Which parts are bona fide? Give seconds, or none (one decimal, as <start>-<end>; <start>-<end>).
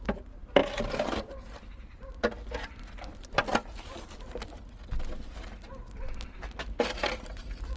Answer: 0.0-3.4; 4.7-7.8